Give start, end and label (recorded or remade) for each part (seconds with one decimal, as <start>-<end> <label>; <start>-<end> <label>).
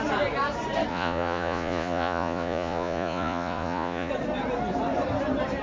0.0-0.9 recorded; 0.9-4.1 remade; 4.1-5.6 recorded